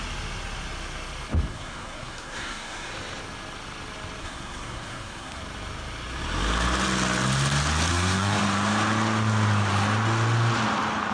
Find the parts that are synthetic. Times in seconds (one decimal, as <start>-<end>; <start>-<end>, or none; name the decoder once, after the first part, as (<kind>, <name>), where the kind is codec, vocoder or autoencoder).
1.5-2.9 (codec, SNAC); 4.2-5.4; 7.9-8.4